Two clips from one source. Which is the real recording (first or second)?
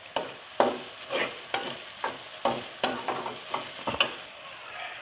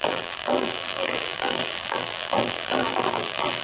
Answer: first